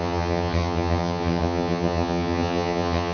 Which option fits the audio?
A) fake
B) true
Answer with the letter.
A